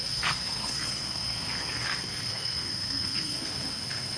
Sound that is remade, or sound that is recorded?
remade